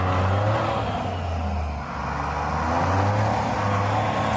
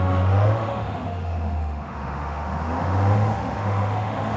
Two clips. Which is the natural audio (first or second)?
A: first